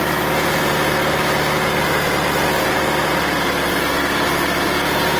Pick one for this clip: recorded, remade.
recorded